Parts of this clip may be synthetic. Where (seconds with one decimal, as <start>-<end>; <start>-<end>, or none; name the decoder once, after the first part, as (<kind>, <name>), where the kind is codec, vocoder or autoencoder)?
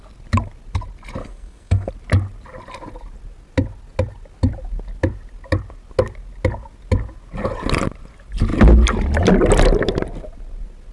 1.2-1.9 (codec, SNAC)